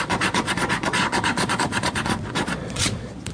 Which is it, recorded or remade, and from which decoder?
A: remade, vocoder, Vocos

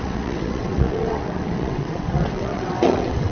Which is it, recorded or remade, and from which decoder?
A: remade, vocoder, WaveNeXt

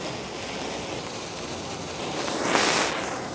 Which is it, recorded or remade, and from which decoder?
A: recorded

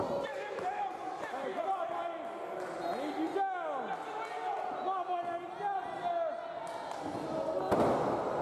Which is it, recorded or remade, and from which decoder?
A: recorded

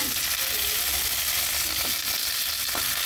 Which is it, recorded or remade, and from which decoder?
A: recorded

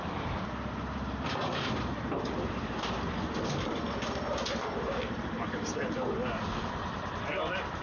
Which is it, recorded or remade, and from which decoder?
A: remade, vocoder, BigVGAN v2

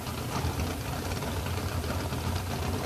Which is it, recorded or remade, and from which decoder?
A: recorded